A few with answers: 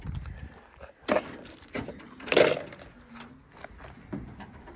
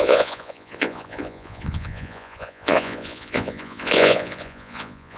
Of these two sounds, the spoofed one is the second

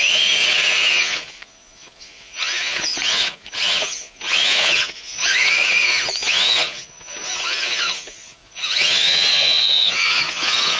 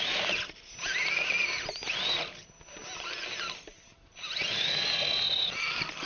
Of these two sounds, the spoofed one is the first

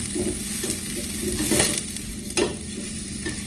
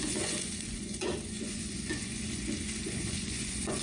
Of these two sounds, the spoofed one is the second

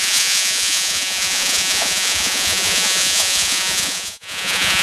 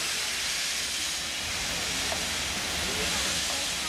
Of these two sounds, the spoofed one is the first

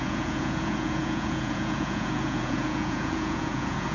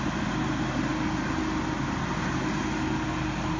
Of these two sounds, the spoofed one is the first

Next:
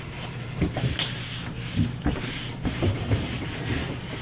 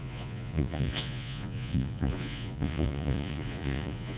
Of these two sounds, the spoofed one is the second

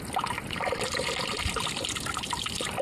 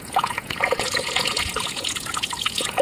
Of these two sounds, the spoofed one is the second